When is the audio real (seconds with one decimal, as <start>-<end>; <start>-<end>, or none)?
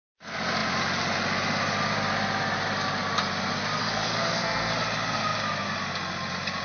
0.0-3.8; 4.7-6.6